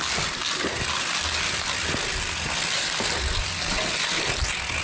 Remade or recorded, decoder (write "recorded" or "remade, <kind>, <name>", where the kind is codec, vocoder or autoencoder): recorded